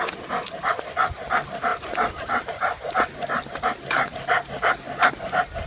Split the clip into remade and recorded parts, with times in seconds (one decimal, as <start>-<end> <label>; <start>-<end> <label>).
0.0-5.7 recorded